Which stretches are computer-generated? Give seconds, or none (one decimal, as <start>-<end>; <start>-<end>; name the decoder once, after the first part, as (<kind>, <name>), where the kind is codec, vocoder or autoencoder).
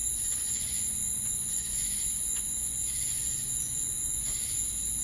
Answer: 0.0-4.3 (vocoder, Vocos)